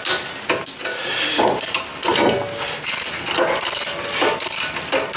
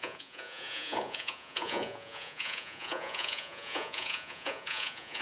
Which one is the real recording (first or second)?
first